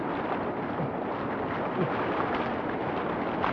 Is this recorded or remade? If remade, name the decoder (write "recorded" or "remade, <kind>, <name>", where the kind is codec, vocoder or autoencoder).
recorded